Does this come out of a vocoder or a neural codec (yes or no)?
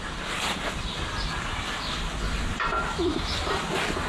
yes